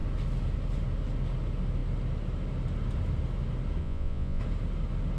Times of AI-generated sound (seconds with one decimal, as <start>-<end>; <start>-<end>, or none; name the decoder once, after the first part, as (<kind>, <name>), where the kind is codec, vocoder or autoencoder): 3.8-4.4 (vocoder, Vocos)